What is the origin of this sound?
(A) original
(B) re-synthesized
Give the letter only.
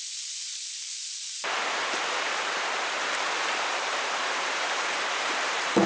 B